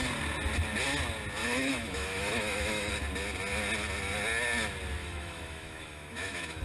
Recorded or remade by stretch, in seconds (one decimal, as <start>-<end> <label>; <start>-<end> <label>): 0.0-1.4 recorded; 1.4-2.9 remade; 2.9-5.0 recorded; 5.0-6.6 remade